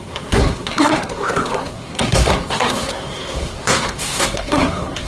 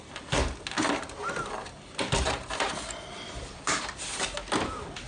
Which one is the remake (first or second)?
first